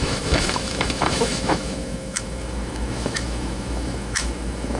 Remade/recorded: remade